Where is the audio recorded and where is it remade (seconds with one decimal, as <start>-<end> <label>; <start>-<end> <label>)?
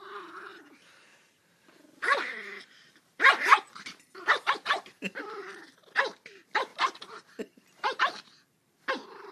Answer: 0.0-0.5 recorded; 0.5-5.2 remade; 5.2-6.7 recorded; 6.7-8.9 remade; 8.9-9.3 recorded